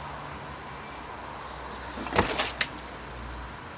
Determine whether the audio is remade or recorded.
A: recorded